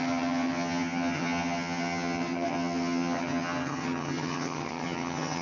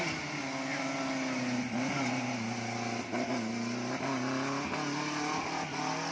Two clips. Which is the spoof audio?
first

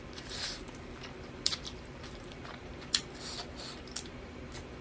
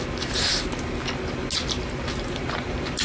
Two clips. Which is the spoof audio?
first